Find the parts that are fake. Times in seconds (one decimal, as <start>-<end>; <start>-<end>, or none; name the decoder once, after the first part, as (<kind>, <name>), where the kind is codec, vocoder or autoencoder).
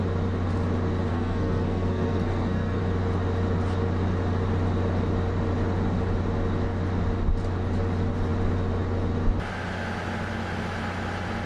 1.1-2.8 (codec, SNAC)